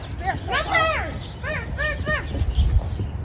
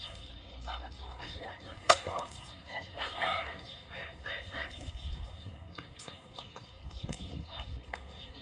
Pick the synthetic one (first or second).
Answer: second